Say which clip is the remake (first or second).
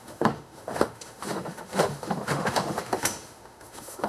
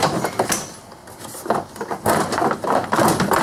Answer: first